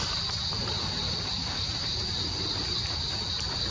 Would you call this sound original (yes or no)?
yes